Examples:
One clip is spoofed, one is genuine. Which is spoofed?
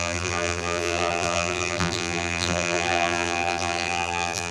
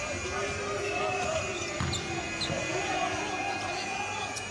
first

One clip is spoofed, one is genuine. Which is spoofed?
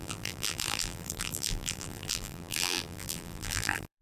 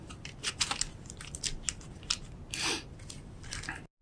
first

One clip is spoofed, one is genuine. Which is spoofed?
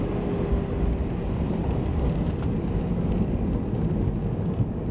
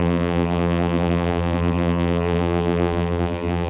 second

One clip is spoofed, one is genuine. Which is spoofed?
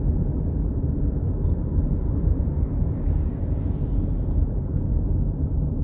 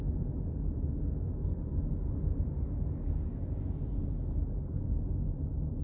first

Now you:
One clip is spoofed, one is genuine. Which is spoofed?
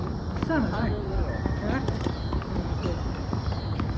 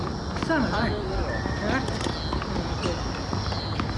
first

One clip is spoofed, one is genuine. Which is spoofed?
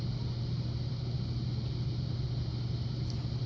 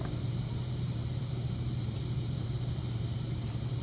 second